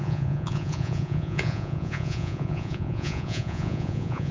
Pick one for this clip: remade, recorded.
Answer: remade